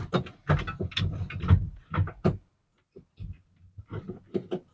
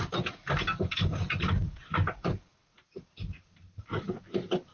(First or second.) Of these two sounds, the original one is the first